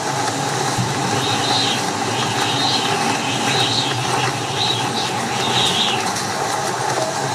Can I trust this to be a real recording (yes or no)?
yes